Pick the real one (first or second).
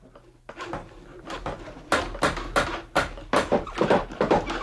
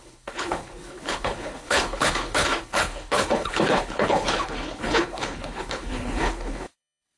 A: first